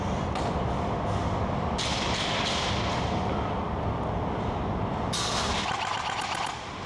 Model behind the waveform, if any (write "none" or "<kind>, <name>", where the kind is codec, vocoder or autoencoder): none